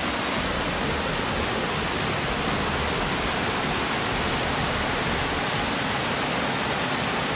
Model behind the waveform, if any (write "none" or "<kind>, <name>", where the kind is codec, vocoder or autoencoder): none